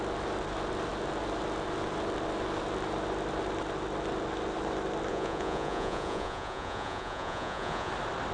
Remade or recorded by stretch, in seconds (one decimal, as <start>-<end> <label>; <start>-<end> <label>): 0.0-5.1 recorded; 5.1-7.9 remade; 7.9-8.3 recorded